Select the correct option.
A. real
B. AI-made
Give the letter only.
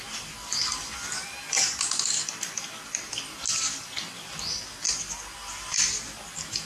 A